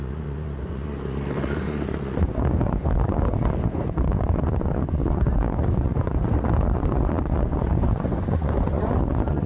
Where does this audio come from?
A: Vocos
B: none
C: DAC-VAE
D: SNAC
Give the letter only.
A